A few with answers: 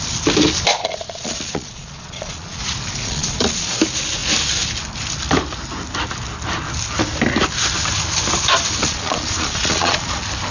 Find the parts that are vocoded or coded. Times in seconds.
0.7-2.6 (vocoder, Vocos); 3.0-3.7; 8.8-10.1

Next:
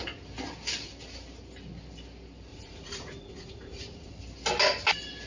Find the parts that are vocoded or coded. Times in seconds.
2.5-4.1 (vocoder, Vocos)

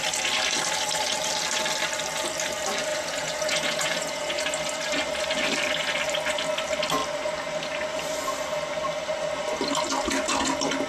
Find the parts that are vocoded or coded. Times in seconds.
2.9-4.4 (vocoder, Vocos)

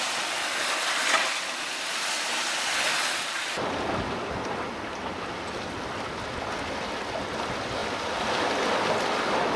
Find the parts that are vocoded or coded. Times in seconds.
none